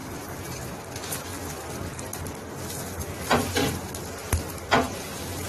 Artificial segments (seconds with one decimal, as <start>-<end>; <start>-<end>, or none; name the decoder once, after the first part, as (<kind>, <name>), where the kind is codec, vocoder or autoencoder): 0.0-0.6 (vocoder, BigVGAN v2)